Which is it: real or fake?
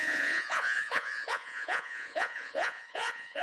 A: fake